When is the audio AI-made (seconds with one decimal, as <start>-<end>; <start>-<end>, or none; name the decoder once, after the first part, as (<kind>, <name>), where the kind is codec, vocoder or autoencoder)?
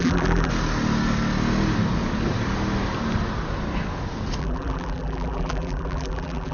0.0-0.5 (vocoder, BigVGAN v2); 4.4-6.5